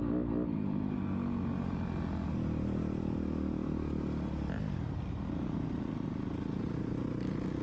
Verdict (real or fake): real